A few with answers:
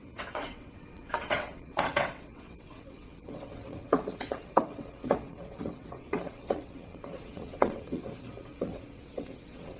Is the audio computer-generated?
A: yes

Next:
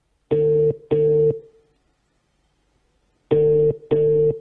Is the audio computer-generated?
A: no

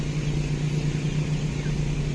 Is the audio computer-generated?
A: no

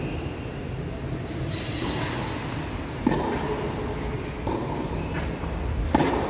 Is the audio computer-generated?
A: no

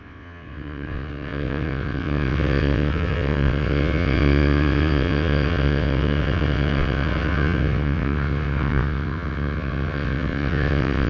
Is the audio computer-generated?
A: yes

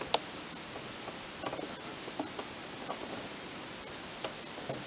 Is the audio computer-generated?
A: no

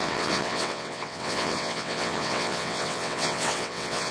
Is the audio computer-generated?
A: yes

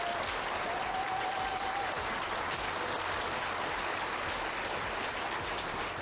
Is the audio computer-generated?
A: no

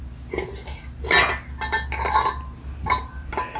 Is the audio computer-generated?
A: no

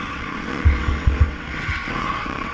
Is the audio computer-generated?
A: yes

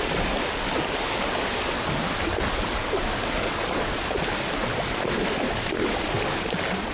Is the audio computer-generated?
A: no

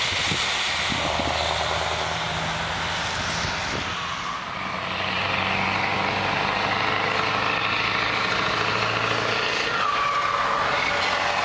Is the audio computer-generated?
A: no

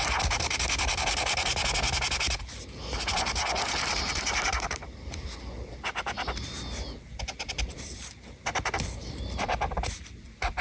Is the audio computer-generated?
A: no